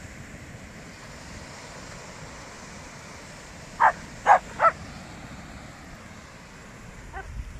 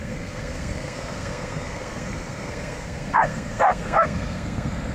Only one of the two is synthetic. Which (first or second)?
second